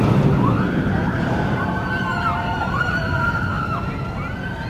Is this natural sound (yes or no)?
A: yes